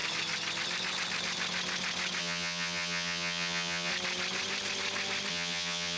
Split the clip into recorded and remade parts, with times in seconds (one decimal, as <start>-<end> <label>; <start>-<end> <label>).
0.0-2.2 recorded; 2.2-3.9 remade; 3.9-5.3 recorded; 5.3-6.0 remade